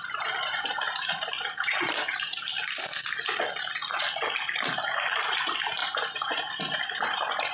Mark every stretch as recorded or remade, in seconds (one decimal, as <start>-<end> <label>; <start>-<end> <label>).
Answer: 0.0-2.1 remade; 2.1-4.4 recorded; 4.4-7.5 remade